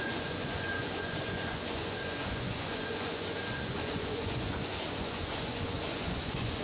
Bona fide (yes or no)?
no